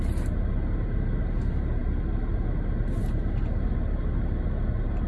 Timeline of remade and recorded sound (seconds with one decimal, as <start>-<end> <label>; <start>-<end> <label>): 0.0-5.1 recorded